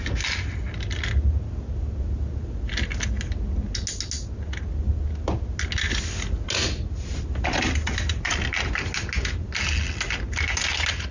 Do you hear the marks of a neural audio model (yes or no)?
no